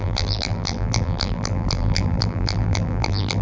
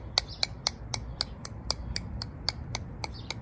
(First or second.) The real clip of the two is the second